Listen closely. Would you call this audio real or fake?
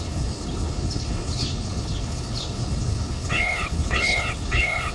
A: fake